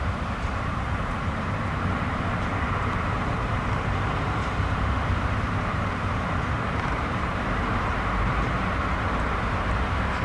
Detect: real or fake fake